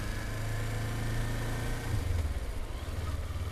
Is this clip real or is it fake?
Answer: real